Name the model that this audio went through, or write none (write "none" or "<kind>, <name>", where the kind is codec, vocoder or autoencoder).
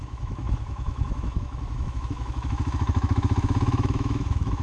autoencoder, DAC-VAE